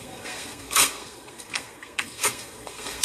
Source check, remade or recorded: remade